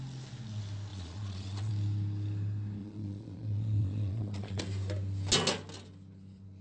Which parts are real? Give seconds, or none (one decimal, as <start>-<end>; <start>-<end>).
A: 0.0-0.9; 1.7-2.8; 4.6-6.6